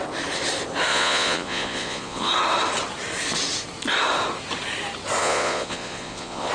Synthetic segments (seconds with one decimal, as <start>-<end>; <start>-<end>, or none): 0.9-2.3; 5.2-6.5